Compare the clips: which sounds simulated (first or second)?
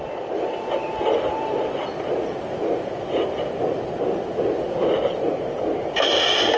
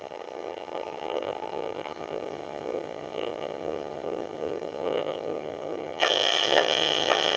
second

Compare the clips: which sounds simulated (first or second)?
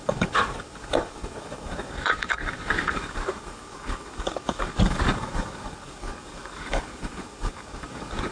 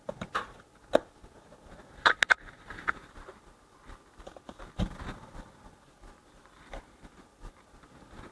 first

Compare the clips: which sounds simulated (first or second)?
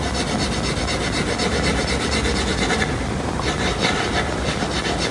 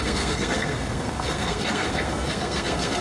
second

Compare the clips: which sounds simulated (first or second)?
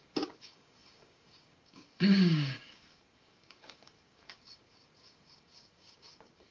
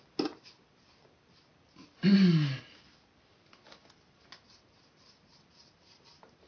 first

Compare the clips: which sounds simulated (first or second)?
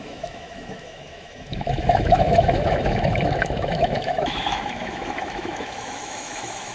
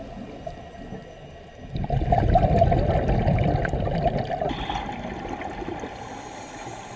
first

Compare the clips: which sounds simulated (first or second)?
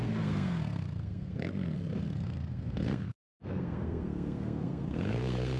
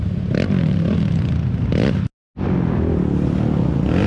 first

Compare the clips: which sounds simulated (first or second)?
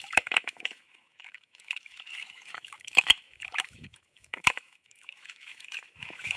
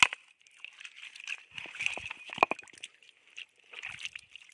first